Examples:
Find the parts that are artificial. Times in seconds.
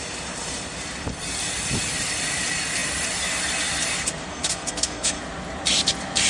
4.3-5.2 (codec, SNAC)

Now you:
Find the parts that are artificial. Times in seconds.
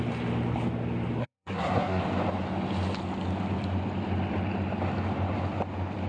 1.2-2.0 (codec, SNAC)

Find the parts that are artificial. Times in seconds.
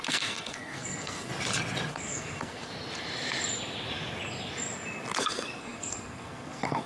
0.0-1.3 (codec, SNAC); 1.9-2.7; 5.2-6.9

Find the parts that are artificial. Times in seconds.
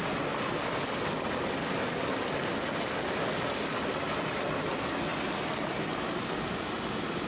none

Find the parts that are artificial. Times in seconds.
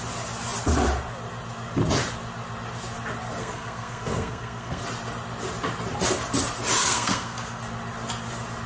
3.4-4.8 (codec, SNAC); 6.8-7.6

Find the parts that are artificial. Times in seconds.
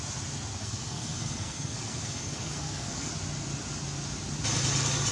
0.6-3.1 (codec, SNAC)